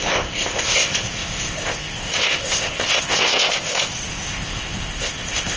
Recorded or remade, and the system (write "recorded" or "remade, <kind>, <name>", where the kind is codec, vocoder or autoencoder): remade, codec, ZipCodec